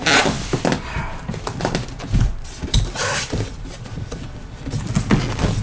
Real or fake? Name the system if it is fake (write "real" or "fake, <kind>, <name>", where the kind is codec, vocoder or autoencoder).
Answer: real